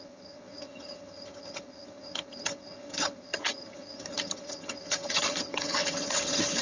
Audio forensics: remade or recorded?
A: remade